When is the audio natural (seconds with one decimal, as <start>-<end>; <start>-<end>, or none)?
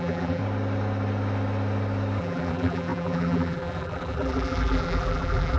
0.4-2.2